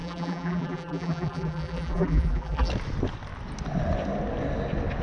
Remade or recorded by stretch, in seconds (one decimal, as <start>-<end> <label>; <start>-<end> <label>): 0.0-2.7 remade; 2.7-5.0 recorded